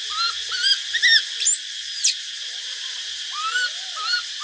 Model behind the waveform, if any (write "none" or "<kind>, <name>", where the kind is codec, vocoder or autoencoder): none